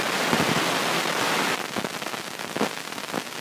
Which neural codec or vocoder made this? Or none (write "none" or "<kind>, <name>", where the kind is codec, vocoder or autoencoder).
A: none